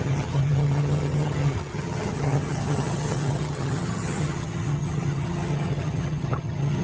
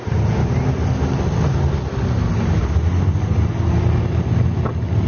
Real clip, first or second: second